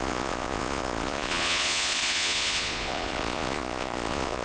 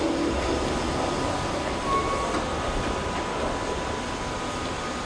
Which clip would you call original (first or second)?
second